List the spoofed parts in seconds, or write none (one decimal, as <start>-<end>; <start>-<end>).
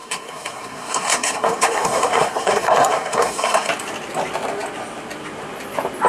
0.0-3.7